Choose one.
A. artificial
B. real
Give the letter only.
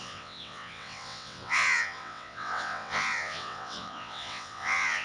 A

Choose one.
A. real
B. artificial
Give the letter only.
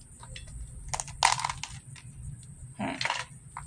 A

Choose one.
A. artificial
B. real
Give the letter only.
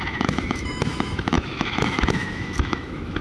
A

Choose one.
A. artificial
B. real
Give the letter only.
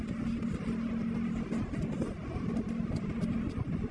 B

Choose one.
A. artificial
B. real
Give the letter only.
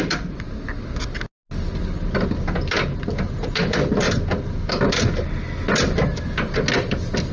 B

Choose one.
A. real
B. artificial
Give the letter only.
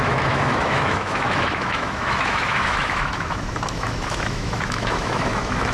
B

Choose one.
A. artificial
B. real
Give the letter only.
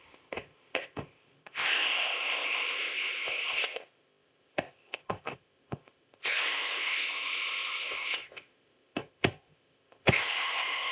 A